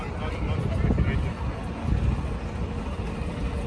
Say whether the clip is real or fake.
real